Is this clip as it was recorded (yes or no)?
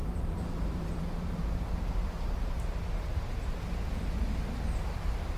no